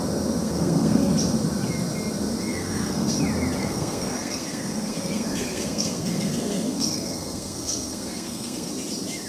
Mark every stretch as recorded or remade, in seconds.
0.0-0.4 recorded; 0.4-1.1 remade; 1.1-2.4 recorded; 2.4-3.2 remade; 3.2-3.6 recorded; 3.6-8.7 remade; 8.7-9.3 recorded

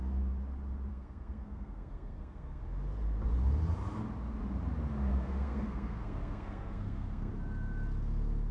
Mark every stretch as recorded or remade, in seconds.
0.0-0.9 recorded; 0.9-2.6 remade; 2.6-5.1 recorded; 5.1-7.3 remade; 7.3-8.5 recorded

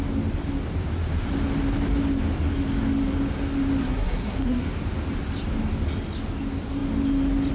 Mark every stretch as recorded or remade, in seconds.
0.0-3.8 recorded; 3.8-4.7 remade; 4.7-7.5 recorded

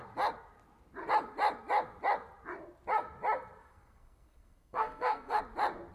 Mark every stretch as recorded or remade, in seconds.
0.0-3.6 recorded; 3.6-5.4 remade; 5.4-5.9 recorded